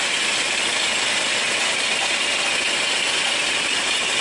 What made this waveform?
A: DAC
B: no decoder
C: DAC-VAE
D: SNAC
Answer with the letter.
B